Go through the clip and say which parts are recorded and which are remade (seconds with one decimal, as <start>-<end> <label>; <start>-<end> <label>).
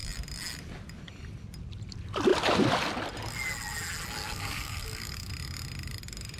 0.0-4.2 recorded; 4.2-5.3 remade; 5.3-6.4 recorded